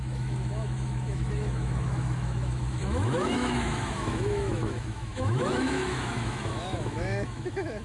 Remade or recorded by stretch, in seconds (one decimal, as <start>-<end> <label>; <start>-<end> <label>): 0.0-7.8 remade